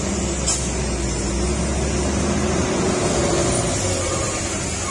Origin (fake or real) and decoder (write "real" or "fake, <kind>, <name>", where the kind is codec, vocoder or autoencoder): real